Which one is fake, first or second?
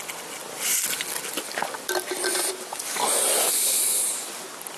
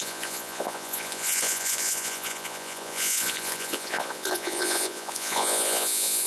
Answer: second